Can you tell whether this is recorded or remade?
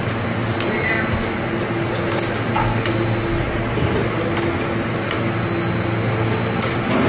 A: recorded